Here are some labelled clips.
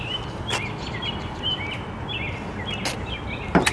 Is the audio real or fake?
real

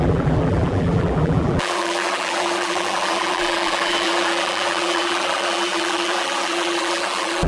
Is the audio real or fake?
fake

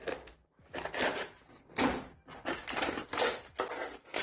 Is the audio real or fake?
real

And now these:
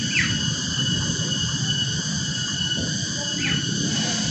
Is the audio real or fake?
real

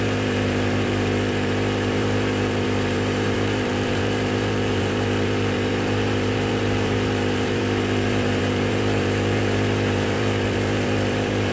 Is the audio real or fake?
fake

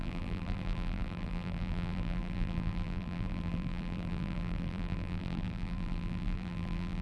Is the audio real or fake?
fake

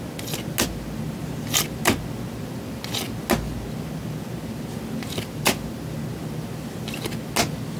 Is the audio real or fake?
real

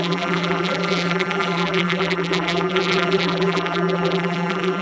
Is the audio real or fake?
fake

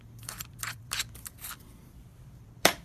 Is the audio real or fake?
fake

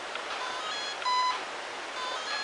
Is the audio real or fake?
fake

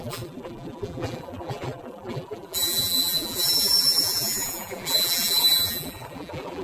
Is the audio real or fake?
fake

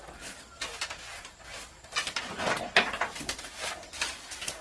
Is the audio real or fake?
real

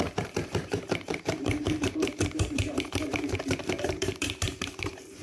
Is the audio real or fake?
fake